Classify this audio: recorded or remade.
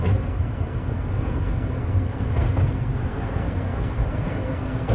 remade